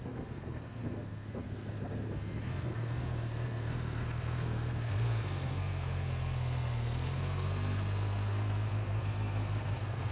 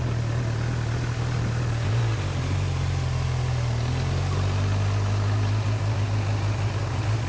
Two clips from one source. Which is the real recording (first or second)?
second